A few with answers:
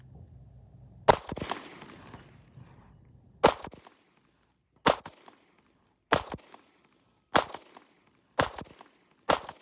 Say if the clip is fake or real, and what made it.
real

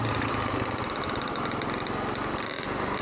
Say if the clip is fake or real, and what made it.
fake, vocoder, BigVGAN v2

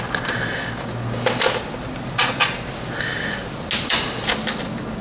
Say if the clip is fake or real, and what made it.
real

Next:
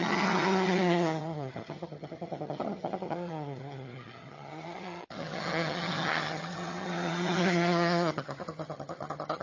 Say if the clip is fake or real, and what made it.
fake, vocoder, HiFi-GAN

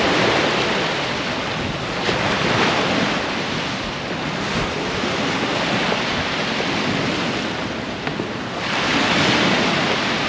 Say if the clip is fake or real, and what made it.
real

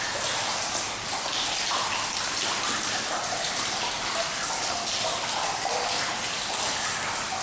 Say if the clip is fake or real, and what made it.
real